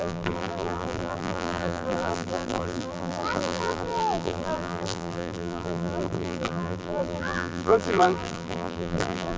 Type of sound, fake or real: fake